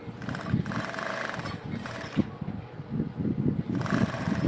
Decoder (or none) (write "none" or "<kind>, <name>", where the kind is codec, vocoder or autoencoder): none